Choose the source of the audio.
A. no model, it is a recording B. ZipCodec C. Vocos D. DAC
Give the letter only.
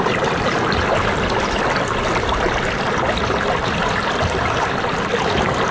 A